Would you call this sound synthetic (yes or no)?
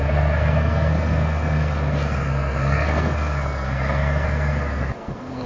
yes